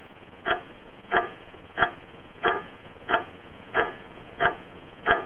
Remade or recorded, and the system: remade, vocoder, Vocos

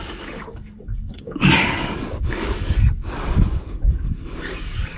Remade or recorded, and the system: remade, codec, DAC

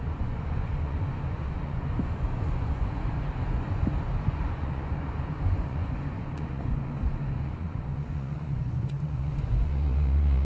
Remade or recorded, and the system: remade, vocoder, Vocos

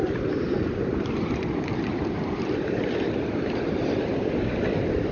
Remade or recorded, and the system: recorded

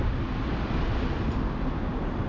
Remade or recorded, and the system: recorded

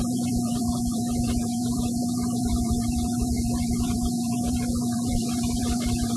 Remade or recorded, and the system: remade, vocoder, BigVGAN v2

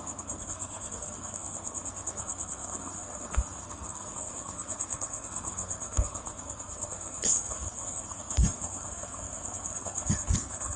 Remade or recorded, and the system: remade, codec, SNAC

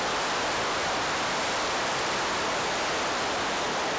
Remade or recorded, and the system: recorded